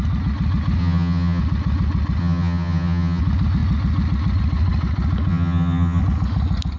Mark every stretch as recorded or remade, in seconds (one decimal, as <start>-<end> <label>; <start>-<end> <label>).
0.0-0.8 recorded; 0.8-1.4 remade; 1.4-2.2 recorded; 2.2-3.2 remade; 3.2-5.3 recorded; 5.3-6.0 remade; 6.0-6.8 recorded